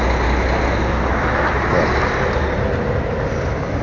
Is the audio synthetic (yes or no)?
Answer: no